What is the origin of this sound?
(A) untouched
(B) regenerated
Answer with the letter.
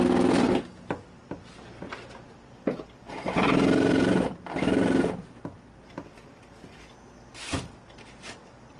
A